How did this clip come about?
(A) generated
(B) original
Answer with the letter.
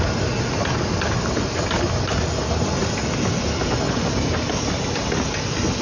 B